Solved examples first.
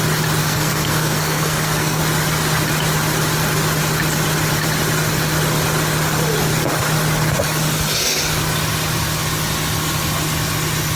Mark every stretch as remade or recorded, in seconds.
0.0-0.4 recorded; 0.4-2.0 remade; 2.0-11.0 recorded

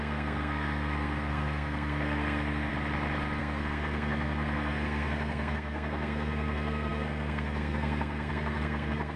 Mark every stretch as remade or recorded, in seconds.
0.0-2.7 remade; 2.7-3.4 recorded; 3.4-9.2 remade

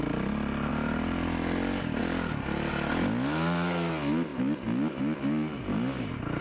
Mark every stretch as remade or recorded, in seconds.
0.0-6.4 recorded

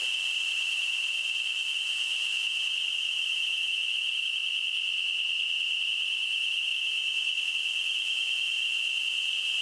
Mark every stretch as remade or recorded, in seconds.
0.0-9.6 recorded

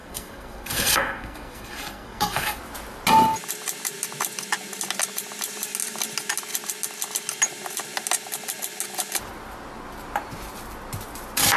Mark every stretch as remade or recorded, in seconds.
0.0-2.6 remade; 2.6-11.6 recorded

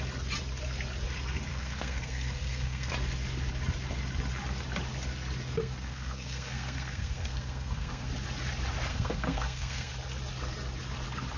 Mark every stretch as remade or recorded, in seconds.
0.0-1.5 recorded; 1.5-2.9 remade; 2.9-5.6 recorded; 5.6-8.1 remade; 8.1-8.9 recorded; 8.9-9.9 remade; 9.9-11.4 recorded